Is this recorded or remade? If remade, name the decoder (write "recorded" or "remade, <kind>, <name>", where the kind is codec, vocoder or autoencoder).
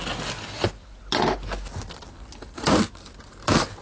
recorded